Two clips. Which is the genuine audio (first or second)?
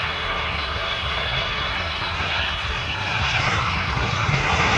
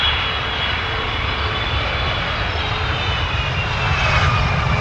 second